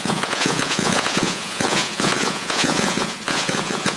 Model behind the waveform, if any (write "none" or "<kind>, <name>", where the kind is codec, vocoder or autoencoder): vocoder, Vocos